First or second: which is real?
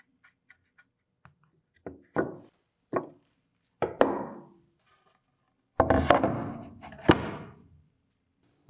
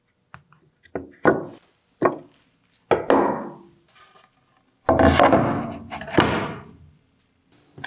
second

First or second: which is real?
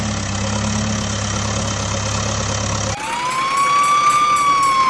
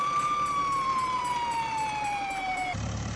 first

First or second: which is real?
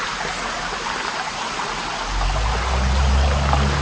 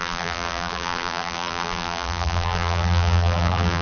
first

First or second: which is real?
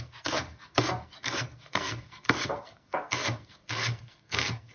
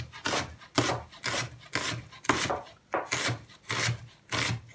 second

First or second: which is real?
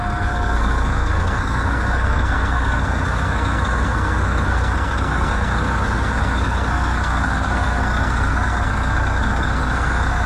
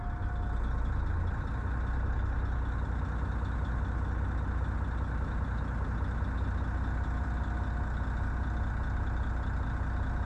second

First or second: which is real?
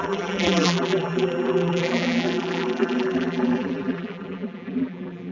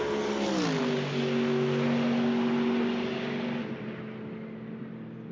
second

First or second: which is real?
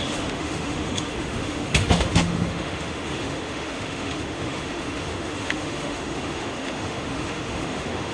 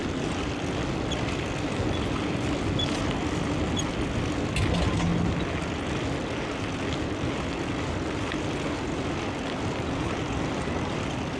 second